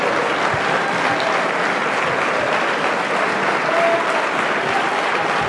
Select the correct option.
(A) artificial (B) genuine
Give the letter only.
B